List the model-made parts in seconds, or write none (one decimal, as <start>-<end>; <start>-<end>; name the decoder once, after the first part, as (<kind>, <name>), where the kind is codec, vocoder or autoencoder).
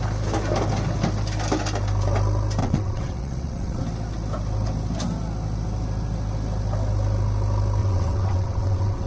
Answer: 2.6-3.8 (vocoder, WaveNeXt); 7.8-9.1